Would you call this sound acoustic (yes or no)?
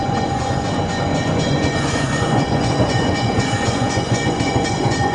no